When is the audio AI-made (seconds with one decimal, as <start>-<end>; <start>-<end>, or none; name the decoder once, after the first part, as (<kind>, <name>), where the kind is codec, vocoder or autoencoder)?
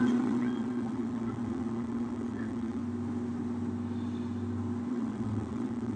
0.0-2.8 (vocoder, WaveNeXt); 4.9-6.0